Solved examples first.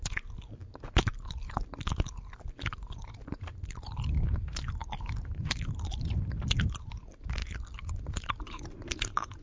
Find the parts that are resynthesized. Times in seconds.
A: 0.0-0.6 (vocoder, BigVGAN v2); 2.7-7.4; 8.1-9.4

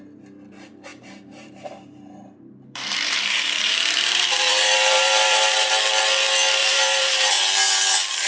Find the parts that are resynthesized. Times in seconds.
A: 0.9-5.7 (vocoder, BigVGAN v2); 6.6-7.3

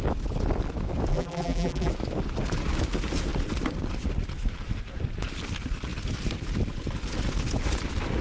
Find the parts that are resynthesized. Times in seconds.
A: 1.1-1.9 (vocoder, BigVGAN v2)

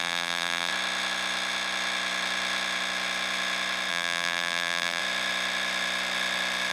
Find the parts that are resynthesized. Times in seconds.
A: 0.0-0.7 (vocoder, BigVGAN v2); 3.9-5.0

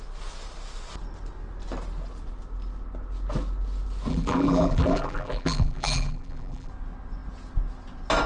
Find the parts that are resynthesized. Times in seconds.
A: 4.1-6.7 (vocoder, BigVGAN v2)

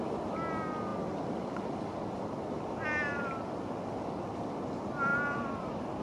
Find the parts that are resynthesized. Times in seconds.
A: 5.1-6.0 (vocoder, BigVGAN v2)

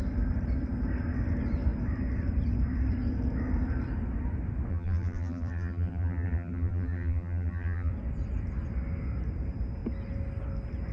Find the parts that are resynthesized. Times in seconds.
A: 4.7-7.9 (vocoder, BigVGAN v2)